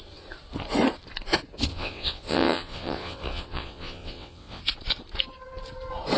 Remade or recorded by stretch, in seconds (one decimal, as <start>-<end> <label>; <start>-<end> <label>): 0.0-1.7 recorded; 1.7-4.6 remade; 4.6-6.2 recorded